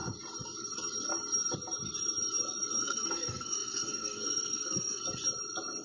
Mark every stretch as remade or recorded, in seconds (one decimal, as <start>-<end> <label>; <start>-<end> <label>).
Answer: 0.0-2.8 recorded; 2.8-5.0 remade; 5.0-5.8 recorded